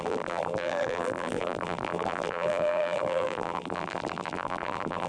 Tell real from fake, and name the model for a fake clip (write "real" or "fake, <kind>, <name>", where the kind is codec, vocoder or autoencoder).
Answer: fake, vocoder, BigVGAN v2